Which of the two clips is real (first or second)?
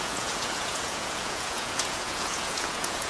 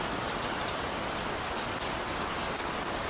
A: second